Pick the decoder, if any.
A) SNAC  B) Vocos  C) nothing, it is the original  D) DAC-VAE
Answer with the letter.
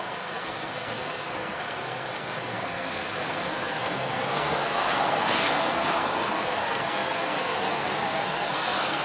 A